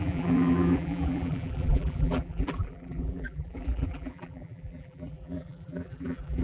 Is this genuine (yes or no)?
no